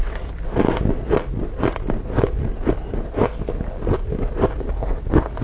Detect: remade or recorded recorded